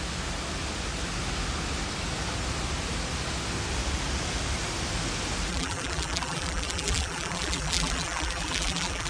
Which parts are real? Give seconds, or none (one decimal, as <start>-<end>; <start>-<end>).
0.0-5.5